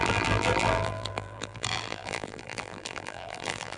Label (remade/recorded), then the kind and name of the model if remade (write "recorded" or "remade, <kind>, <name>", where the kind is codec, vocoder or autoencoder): remade, vocoder, BigVGAN v2